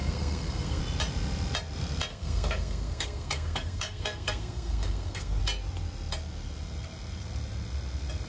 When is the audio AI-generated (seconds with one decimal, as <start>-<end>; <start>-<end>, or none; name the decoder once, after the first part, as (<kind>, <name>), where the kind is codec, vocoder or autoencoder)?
0.0-0.8 (codec, SNAC); 2.1-5.4